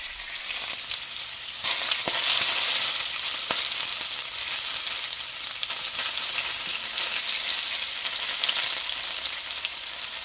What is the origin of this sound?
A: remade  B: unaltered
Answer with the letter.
B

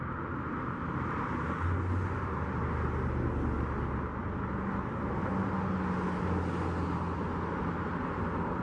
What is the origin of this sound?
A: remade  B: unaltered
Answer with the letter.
B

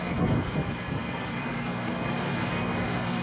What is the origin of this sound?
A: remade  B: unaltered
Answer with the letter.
A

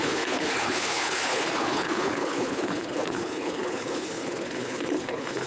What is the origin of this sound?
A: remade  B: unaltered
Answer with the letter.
A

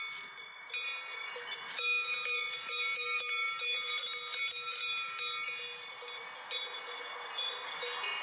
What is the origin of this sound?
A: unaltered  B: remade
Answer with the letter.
A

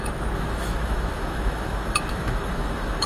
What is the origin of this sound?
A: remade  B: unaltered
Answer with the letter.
A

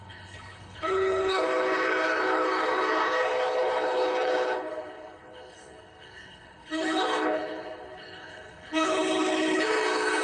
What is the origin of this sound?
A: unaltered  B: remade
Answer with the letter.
B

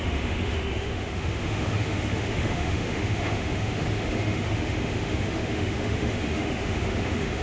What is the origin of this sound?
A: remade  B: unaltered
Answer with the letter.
A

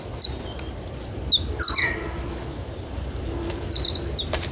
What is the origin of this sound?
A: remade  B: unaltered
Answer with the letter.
B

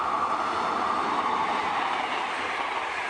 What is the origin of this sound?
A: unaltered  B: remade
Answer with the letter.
B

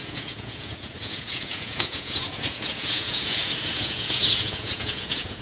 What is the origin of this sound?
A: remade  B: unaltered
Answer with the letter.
A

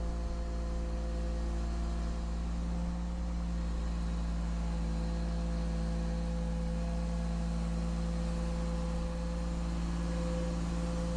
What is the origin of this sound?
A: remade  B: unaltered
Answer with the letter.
B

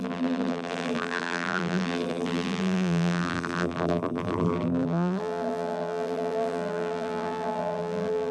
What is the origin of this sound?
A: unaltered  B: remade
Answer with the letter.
B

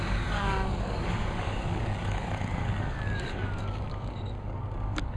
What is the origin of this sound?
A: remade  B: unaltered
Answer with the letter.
A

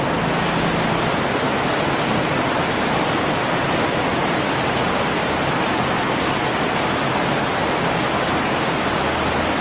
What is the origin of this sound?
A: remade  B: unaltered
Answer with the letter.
B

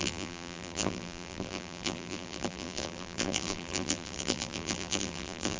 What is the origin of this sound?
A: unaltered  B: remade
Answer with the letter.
B